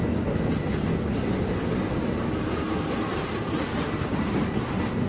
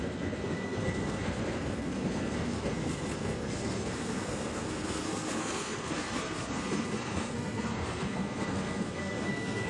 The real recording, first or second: first